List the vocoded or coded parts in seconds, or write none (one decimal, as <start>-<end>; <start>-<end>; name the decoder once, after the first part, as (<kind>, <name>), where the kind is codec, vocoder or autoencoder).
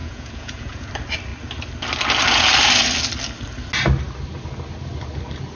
0.0-0.9 (vocoder, Vocos)